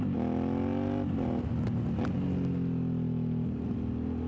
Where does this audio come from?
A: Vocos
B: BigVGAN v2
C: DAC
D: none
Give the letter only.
D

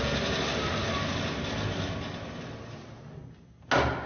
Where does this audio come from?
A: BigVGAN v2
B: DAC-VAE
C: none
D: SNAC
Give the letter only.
C